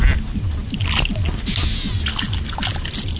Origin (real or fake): real